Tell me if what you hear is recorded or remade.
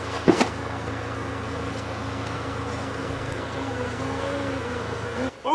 remade